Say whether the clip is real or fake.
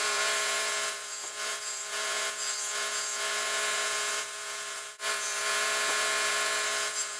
fake